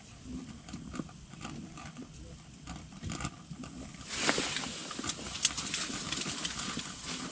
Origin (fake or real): real